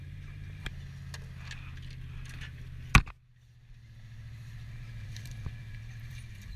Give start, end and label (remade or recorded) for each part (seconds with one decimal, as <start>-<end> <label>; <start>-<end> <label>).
0.0-0.7 remade; 0.7-4.7 recorded; 4.7-6.6 remade